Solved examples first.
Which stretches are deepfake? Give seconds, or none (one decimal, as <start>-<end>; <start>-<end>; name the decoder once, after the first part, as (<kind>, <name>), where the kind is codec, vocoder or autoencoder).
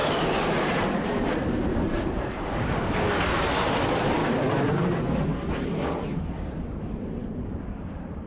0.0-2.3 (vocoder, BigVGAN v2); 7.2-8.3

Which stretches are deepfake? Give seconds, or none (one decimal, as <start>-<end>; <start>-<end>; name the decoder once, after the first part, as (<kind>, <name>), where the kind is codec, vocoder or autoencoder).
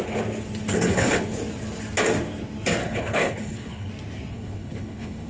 0.7-1.2 (codec, HILCodec); 2.8-3.9; 4.3-5.3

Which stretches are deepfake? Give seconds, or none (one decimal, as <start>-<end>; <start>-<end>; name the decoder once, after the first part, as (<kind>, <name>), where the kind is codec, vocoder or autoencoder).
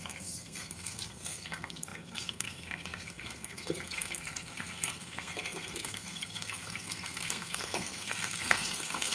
0.0-9.1 (codec, SNAC)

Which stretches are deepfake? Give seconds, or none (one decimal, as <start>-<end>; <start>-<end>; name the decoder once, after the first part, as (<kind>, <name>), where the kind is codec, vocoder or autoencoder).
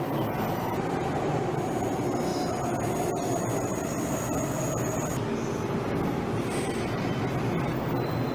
none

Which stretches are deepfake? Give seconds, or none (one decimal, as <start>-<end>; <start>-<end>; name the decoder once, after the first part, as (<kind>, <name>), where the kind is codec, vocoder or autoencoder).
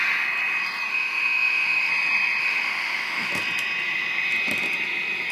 0.9-1.9 (autoencoder, DAC-VAE); 2.4-3.3